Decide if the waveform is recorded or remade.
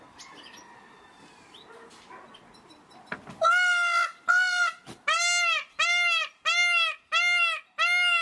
recorded